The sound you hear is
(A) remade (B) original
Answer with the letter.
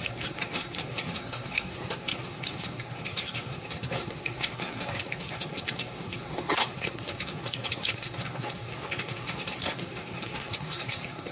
A